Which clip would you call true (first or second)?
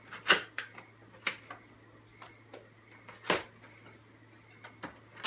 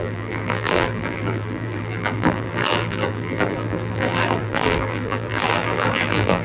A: first